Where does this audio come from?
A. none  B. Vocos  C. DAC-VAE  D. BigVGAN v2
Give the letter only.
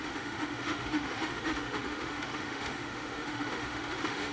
C